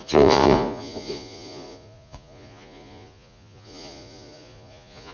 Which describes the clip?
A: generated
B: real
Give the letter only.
A